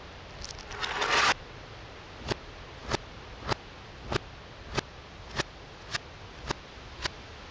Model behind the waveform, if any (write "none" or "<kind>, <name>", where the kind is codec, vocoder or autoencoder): none